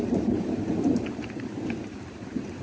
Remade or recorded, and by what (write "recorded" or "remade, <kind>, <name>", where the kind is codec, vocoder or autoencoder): remade, vocoder, BigVGAN v2